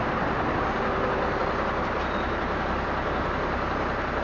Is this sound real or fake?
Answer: real